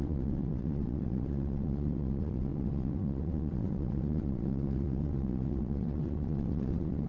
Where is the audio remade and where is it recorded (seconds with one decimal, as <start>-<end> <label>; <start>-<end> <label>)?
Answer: 0.0-7.1 remade